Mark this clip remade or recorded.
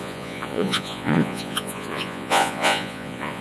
remade